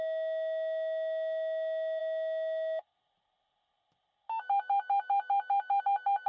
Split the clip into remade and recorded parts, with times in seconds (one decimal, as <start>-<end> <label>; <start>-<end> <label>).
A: 0.0-6.3 recorded